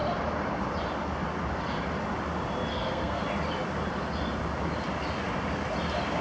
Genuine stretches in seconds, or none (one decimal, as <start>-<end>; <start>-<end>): 0.0-2.7; 3.2-6.2